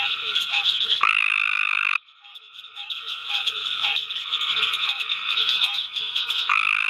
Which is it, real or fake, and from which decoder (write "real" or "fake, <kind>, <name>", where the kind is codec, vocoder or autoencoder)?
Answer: fake, codec, SNAC